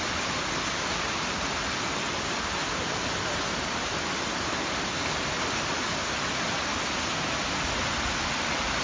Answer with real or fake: real